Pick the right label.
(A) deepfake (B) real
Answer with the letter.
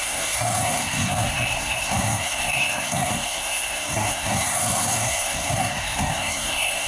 A